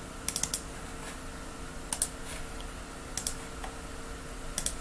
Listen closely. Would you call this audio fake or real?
real